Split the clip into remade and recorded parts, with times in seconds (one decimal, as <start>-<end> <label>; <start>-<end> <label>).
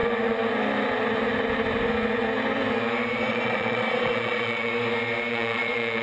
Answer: 0.0-3.3 recorded; 3.3-4.7 remade; 4.7-5.3 recorded; 5.3-6.0 remade